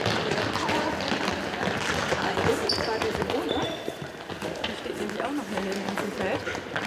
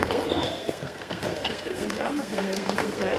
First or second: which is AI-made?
second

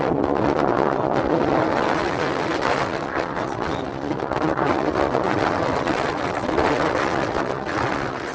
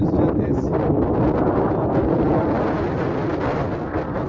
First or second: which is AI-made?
first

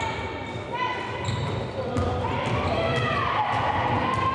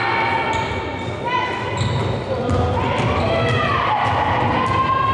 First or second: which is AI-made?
first